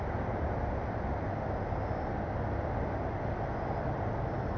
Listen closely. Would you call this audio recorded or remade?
recorded